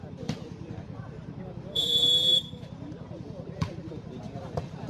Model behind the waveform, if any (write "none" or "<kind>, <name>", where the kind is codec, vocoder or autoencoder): vocoder, BigVGAN v2